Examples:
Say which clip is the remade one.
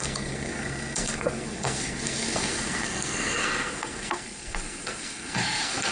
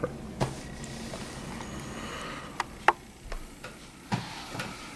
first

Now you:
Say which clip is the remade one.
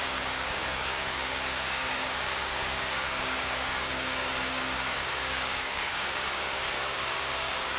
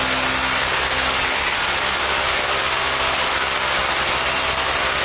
first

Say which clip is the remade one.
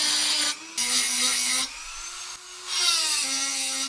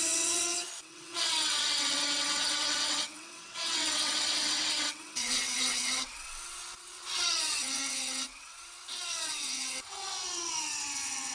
second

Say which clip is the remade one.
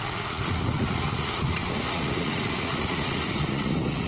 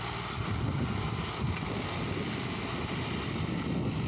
first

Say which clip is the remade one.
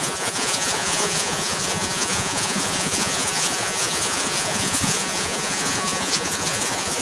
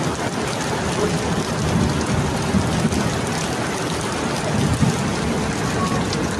first